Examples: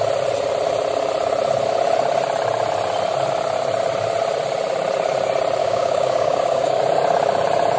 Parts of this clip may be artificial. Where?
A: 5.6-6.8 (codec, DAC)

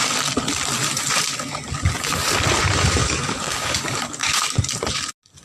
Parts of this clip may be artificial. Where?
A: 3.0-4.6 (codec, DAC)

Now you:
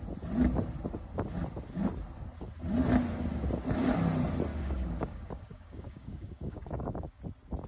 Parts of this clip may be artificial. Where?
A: 4.5-7.2 (codec, DAC)

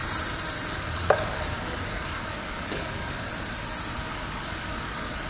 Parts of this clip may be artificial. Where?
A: 0.7-3.3 (codec, DAC); 4.0-5.3

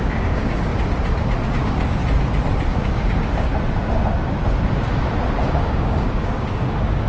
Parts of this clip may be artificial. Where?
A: 0.0-0.7 (codec, DAC); 1.5-2.0; 2.7-3.5; 5.6-7.1